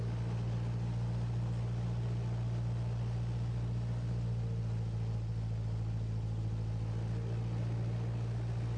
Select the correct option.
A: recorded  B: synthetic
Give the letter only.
A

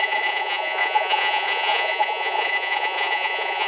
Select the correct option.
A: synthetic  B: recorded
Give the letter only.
A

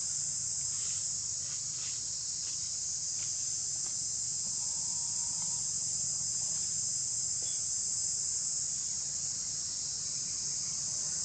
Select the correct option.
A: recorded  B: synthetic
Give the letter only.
A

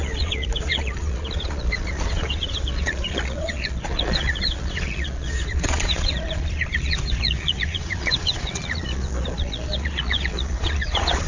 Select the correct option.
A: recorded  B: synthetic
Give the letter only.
B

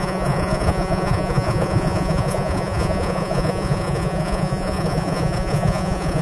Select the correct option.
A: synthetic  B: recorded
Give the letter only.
A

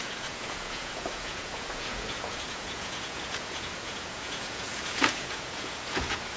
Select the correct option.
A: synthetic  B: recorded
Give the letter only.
A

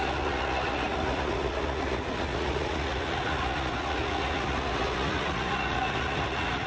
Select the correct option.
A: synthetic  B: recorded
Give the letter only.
A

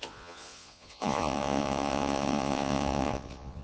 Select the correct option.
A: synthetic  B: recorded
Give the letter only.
A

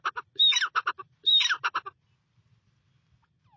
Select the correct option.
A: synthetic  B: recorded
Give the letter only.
B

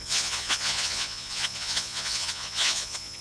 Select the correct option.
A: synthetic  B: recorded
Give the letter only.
A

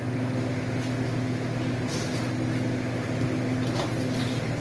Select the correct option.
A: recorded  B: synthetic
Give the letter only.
A